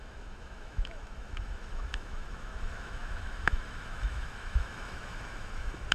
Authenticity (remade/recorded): remade